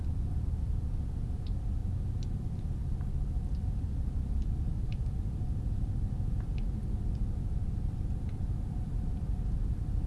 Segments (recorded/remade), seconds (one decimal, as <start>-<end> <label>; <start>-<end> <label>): 0.0-10.1 recorded